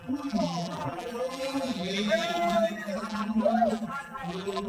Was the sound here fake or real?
fake